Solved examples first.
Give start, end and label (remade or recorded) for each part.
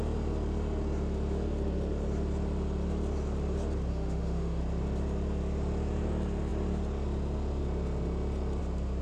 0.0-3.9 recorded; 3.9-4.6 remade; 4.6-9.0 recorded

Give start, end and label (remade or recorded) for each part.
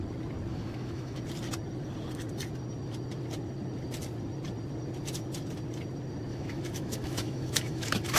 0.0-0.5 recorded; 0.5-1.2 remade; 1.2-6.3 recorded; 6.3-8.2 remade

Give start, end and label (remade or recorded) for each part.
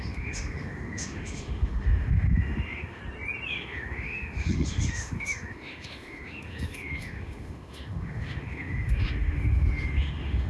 0.0-3.0 remade; 3.0-3.5 recorded; 3.5-10.5 remade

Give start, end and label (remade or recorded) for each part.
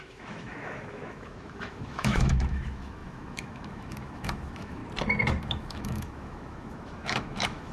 0.0-4.8 remade; 4.8-5.4 recorded; 5.4-7.7 remade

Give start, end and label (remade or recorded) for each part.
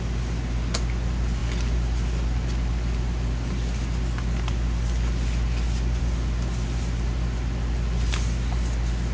0.0-9.1 recorded